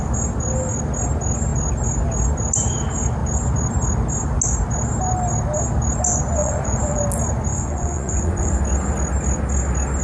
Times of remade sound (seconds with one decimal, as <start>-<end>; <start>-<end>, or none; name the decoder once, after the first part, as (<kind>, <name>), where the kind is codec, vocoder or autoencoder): 6.4-7.0 (vocoder, Vocos); 7.5-8.6